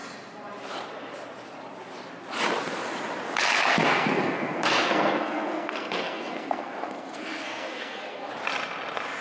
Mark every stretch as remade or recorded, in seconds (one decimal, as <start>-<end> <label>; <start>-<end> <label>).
0.0-3.7 recorded; 3.7-8.3 remade; 8.3-9.2 recorded